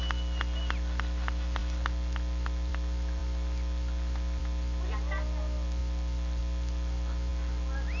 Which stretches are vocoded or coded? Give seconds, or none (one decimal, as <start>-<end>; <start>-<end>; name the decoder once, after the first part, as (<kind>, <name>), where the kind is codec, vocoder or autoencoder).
none